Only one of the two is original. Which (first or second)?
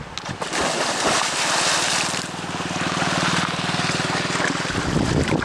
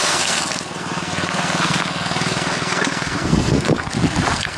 first